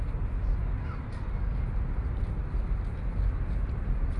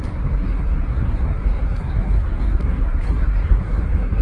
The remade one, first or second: second